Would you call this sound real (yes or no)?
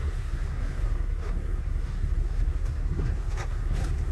no